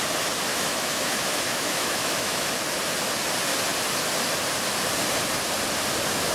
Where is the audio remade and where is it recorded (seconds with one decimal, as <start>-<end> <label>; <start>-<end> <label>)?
0.0-0.5 recorded; 0.5-2.5 remade; 2.5-6.3 recorded